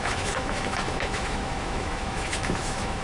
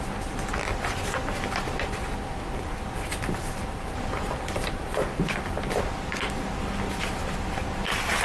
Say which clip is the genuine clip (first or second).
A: second